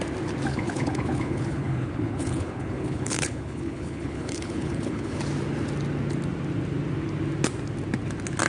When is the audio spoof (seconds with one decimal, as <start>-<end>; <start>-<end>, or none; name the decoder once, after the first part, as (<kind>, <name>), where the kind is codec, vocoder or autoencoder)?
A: 0.5-5.2 (codec, HILCodec)